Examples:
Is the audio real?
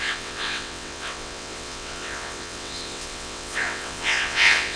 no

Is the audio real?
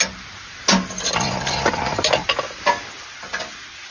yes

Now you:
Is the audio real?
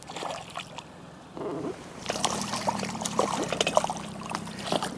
no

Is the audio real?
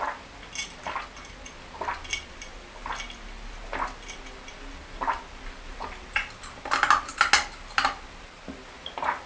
yes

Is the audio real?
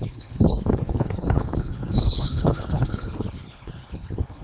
no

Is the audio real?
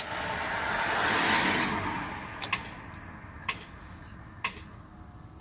yes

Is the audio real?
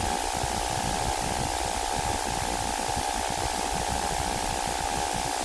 yes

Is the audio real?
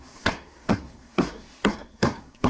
no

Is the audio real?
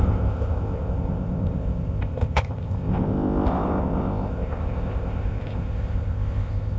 no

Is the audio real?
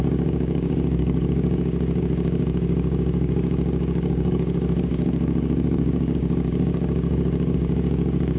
no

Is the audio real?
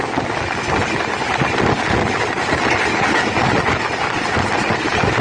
yes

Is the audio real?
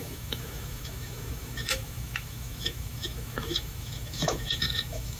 no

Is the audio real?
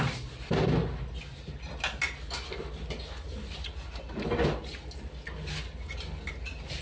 yes